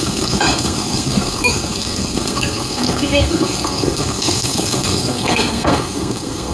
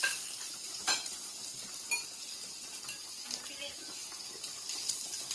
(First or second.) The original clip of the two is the second